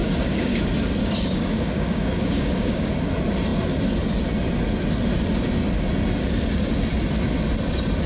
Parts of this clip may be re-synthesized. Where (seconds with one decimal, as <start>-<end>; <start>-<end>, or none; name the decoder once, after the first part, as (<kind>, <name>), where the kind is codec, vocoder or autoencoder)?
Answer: 0.0-0.6 (codec, DAC); 1.0-2.9